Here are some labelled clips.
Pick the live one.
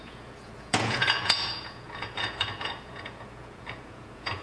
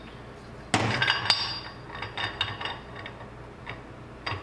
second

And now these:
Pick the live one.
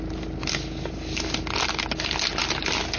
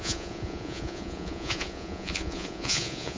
first